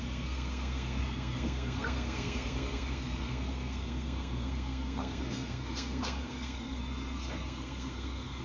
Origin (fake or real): fake